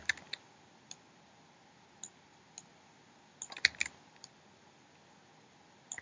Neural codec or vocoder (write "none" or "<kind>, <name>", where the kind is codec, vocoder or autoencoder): none